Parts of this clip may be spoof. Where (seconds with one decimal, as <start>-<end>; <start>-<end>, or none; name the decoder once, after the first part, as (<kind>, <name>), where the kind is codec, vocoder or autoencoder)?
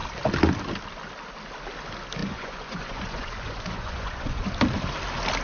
2.2-4.5 (vocoder, Vocos)